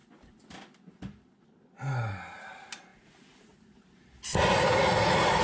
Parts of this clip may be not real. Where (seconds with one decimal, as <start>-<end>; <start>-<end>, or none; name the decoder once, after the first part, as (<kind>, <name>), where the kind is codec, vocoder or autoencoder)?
2.1-5.4 (vocoder, BigVGAN v2)